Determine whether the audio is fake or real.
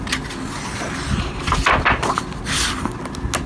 real